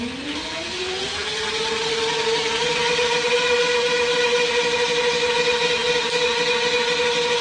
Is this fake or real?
real